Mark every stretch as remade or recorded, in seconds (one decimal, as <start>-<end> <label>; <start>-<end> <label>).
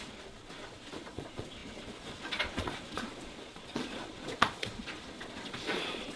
0.0-6.2 remade